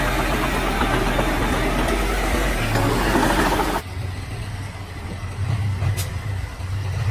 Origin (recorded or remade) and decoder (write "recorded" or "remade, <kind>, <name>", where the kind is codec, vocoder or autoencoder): recorded